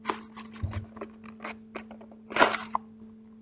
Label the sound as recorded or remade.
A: recorded